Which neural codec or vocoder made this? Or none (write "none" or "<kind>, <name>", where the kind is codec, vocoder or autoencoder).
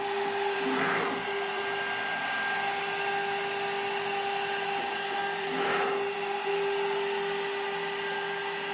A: none